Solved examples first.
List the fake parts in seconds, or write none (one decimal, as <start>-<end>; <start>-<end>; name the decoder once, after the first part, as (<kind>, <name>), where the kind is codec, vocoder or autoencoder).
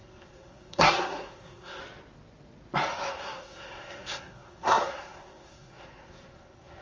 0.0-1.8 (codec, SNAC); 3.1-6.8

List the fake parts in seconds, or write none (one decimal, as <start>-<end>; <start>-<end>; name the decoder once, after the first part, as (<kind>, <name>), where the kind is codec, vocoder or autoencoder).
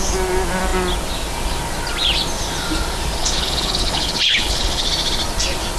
3.2-4.9 (codec, HILCodec)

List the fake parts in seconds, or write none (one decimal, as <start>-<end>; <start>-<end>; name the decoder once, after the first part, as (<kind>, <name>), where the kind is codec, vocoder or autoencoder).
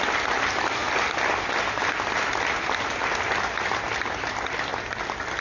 none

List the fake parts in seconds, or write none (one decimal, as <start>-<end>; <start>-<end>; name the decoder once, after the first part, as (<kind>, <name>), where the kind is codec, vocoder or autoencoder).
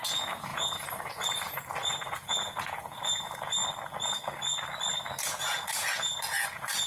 0.0-3.6 (vocoder, Vocos); 5.2-6.9